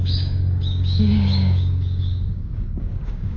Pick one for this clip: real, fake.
fake